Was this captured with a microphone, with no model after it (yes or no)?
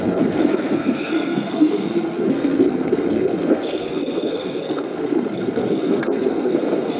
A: no